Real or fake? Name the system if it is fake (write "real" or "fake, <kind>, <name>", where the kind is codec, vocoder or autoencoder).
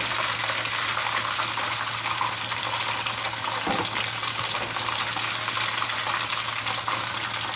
real